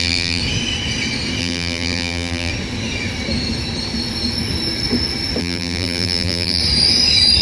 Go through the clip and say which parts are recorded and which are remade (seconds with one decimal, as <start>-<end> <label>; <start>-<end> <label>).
0.0-0.4 remade; 0.4-1.4 recorded; 1.4-2.5 remade; 2.5-5.4 recorded; 5.4-6.6 remade; 6.6-7.4 recorded

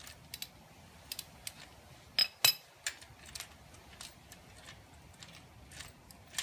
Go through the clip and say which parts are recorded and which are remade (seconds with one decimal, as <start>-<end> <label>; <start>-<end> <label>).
0.0-6.4 recorded